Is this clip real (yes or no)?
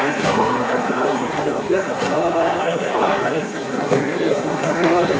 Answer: no